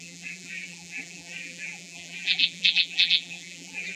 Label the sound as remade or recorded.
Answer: remade